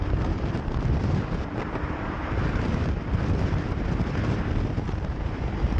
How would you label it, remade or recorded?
remade